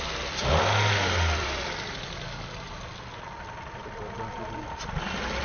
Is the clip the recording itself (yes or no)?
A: yes